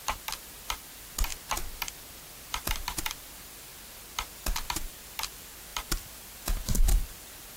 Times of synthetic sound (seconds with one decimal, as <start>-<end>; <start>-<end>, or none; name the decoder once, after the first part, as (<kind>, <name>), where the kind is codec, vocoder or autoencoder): 0.0-1.3 (vocoder, BigVGAN v2); 2.5-3.7; 4.3-7.6